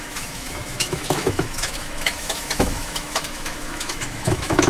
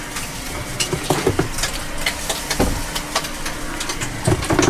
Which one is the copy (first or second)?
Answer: first